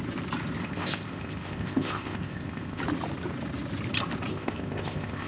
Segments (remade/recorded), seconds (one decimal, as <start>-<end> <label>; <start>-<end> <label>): 0.0-0.6 recorded; 0.6-2.8 remade; 2.8-4.3 recorded; 4.3-5.3 remade